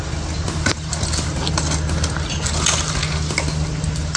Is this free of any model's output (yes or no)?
yes